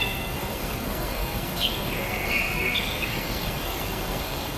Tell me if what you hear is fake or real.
fake